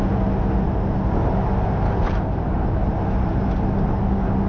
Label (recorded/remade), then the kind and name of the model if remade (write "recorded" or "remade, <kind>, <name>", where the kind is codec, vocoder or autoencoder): recorded